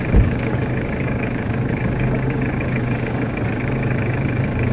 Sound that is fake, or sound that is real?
fake